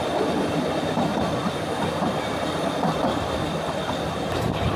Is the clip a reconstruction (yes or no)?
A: no